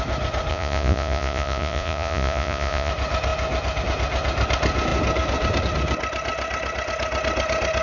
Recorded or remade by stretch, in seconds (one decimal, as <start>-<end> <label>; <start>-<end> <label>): 0.0-0.5 recorded; 0.5-2.9 remade; 2.9-7.8 recorded